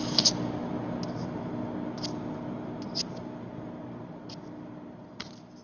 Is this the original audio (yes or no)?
yes